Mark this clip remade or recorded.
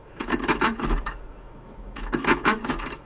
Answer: remade